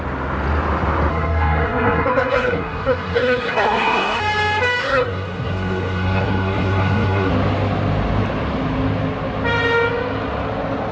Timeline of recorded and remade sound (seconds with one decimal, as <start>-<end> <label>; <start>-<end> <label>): 0.0-1.1 recorded; 1.1-4.2 remade; 4.2-4.8 recorded; 4.8-7.3 remade; 7.3-10.9 recorded